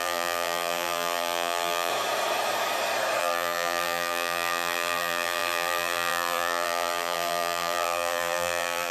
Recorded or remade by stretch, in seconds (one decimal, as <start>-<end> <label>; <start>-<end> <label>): 0.0-1.9 remade; 1.9-3.2 recorded; 3.2-8.9 remade